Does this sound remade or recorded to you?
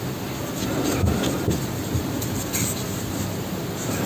recorded